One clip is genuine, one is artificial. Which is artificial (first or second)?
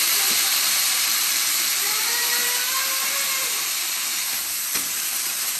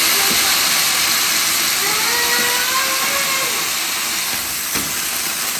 first